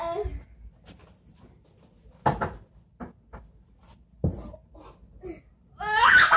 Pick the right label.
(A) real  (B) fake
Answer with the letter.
A